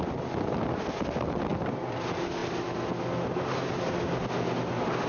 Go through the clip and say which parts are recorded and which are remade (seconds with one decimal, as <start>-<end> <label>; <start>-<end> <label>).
0.0-5.1 recorded